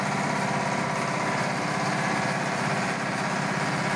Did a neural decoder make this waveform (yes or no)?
no